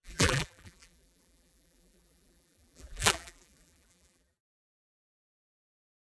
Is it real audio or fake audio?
fake